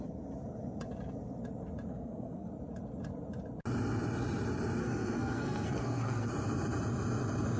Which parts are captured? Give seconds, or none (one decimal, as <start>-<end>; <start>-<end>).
0.0-1.9; 2.5-4.8; 6.3-7.6